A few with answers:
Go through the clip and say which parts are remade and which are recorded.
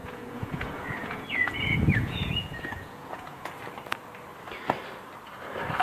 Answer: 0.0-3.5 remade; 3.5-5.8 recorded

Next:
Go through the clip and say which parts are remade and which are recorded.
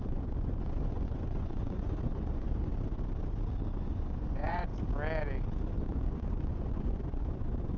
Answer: 0.0-2.7 remade; 2.7-3.8 recorded; 3.8-4.7 remade; 4.7-5.8 recorded; 5.8-7.8 remade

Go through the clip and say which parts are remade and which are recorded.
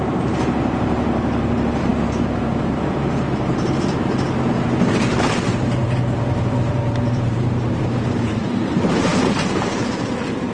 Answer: 0.0-10.5 remade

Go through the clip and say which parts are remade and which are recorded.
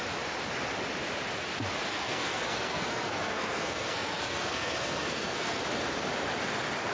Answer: 0.0-1.9 recorded; 1.9-5.6 remade; 5.6-6.9 recorded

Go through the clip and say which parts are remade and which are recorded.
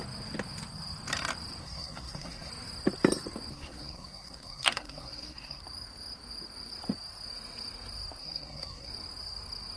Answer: 0.0-1.6 recorded; 1.6-2.5 remade; 2.5-3.5 recorded; 3.5-5.6 remade; 5.6-8.2 recorded; 8.2-8.9 remade; 8.9-9.8 recorded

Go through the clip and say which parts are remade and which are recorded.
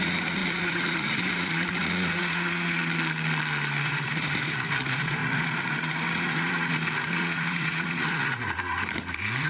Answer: 0.0-2.8 remade; 2.8-3.8 recorded; 3.8-9.5 remade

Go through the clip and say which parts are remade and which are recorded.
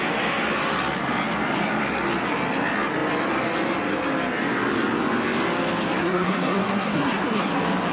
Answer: 0.0-6.0 recorded; 6.0-7.5 remade; 7.5-7.9 recorded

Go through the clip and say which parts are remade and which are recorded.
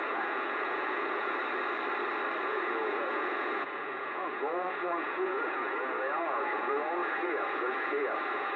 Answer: 0.0-1.4 remade; 1.4-2.4 recorded; 2.4-8.6 remade